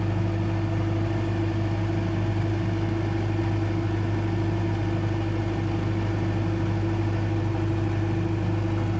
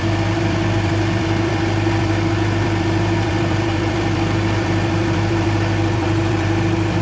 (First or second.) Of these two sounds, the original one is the first